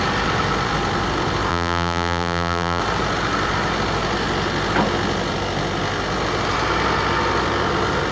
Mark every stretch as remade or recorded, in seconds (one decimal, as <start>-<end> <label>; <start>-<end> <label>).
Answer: 0.0-1.5 recorded; 1.5-2.8 remade; 2.8-8.1 recorded